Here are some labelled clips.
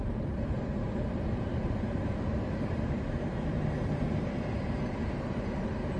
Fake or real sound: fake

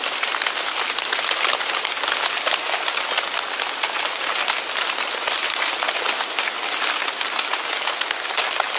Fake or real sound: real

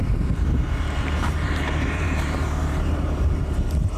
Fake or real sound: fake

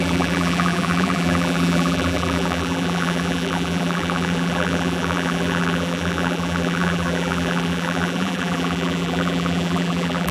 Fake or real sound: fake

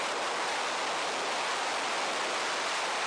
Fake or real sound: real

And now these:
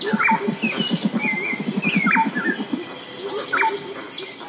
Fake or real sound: real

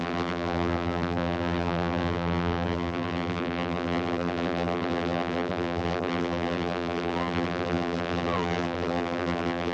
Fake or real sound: fake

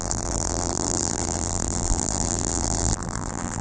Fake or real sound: fake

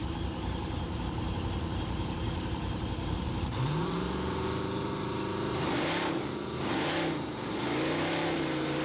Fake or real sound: fake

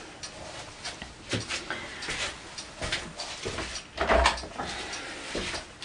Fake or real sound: real